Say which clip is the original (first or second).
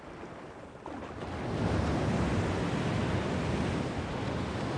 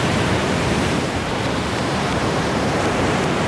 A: first